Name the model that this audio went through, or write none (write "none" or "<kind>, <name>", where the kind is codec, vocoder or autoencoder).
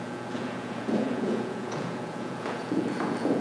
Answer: vocoder, Vocos